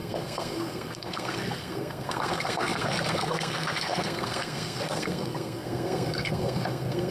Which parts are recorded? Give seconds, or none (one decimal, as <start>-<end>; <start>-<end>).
none